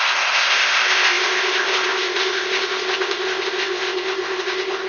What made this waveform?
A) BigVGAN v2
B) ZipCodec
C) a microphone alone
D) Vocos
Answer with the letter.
B